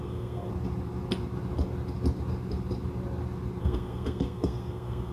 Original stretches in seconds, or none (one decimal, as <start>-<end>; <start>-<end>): 0.5-3.6